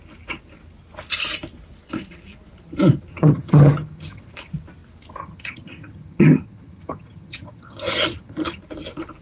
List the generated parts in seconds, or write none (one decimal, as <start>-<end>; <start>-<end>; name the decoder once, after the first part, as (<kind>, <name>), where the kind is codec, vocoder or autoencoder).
3.1-4.3 (vocoder, HiFi-GAN); 5.2-8.6